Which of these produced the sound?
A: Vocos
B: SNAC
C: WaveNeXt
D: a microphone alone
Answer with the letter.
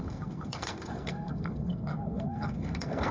B